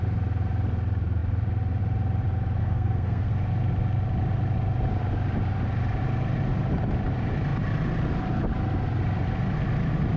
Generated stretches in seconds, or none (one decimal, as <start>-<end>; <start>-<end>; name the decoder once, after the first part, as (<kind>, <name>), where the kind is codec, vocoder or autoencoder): 2.6-3.3 (codec, SNAC)